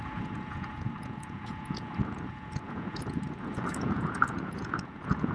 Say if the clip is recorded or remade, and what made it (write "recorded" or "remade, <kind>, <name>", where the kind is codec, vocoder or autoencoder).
remade, vocoder, Vocos